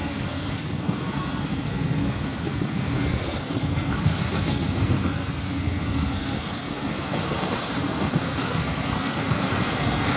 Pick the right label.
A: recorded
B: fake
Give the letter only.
B